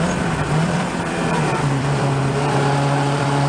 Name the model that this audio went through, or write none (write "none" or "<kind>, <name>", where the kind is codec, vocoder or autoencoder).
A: vocoder, BigVGAN v2